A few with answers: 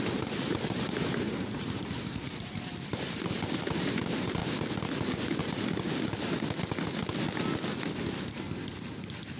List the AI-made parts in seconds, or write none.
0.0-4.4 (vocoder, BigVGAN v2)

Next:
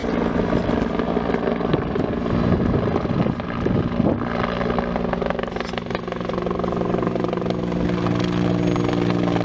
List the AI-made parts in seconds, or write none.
none

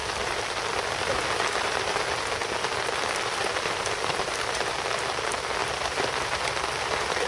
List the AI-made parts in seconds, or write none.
0.0-2.0 (vocoder, BigVGAN v2); 2.4-4.8; 5.6-7.3

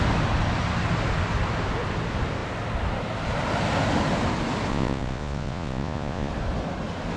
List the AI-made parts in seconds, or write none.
4.7-6.3 (vocoder, Vocos)